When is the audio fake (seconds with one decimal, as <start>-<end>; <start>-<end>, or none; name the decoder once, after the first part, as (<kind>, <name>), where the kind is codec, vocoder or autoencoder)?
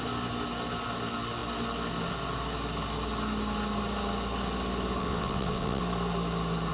5.0-5.8 (vocoder, WaveNeXt)